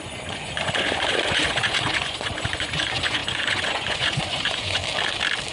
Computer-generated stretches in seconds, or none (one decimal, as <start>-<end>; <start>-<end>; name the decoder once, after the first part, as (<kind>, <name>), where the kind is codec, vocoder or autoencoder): 0.0-4.8 (vocoder, Vocos)